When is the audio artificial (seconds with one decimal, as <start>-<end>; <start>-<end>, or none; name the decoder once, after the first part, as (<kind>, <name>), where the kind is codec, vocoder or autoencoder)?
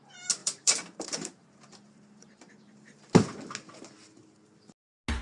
0.4-3.0 (vocoder, BigVGAN v2)